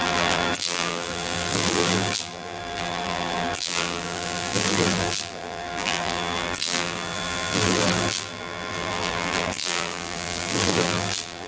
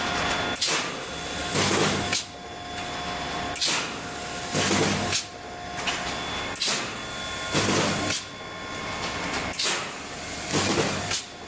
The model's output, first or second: first